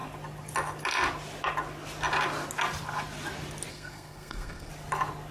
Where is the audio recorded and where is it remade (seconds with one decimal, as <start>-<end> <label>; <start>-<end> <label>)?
0.0-3.7 recorded; 3.7-4.7 remade; 4.7-5.3 recorded